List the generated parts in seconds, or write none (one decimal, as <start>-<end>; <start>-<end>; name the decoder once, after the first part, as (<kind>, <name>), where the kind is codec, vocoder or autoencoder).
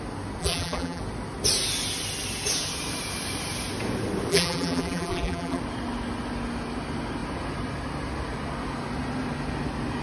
0.4-1.0 (vocoder, BigVGAN v2); 4.3-5.6